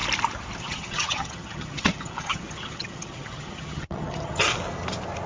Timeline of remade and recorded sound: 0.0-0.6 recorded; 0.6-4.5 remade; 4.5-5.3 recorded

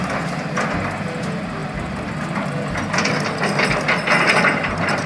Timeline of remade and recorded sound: 0.0-5.1 recorded